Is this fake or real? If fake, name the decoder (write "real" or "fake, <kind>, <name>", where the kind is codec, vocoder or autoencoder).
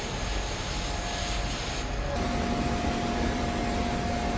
real